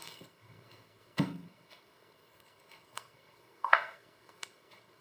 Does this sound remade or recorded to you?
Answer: remade